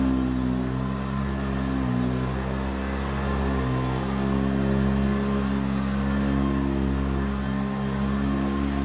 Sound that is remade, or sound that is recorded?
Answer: recorded